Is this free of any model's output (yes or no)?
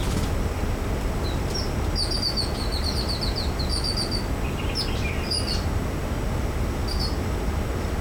yes